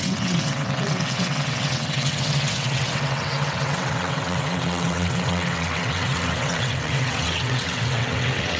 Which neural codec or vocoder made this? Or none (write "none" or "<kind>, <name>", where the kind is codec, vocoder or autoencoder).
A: vocoder, WaveNeXt